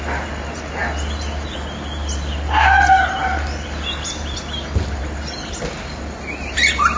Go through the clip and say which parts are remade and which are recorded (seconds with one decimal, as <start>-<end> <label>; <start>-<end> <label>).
0.0-7.0 recorded